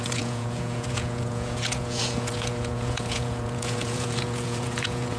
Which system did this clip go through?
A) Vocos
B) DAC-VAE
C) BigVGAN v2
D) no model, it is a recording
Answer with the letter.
A